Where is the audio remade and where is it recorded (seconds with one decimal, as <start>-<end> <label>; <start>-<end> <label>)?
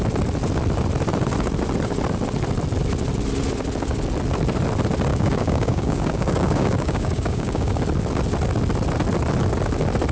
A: 0.0-5.1 recorded; 5.1-7.8 remade; 7.8-10.1 recorded